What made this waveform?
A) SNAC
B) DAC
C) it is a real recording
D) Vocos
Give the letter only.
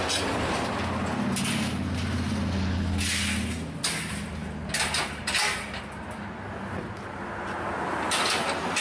C